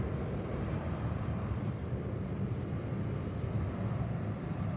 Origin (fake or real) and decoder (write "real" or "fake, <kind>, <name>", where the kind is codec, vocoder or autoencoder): fake, vocoder, BigVGAN v2